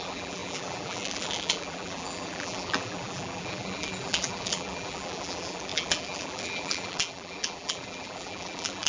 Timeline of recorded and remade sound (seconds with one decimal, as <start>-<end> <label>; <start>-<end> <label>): 0.0-8.9 remade